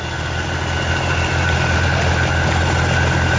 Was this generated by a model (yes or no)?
no